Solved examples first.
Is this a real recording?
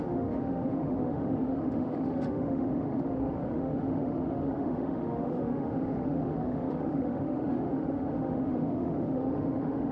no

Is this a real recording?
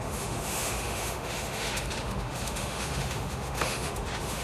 no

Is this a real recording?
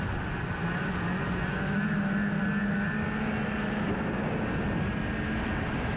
yes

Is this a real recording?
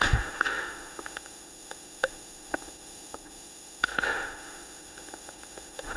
no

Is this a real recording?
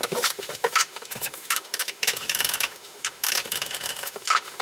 no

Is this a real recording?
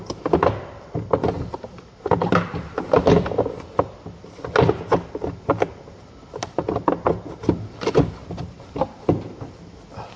yes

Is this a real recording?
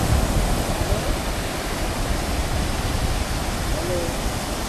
yes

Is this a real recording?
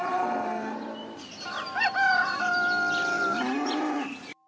yes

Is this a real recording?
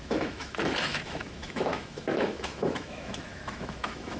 no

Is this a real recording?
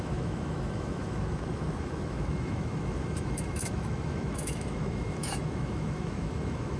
no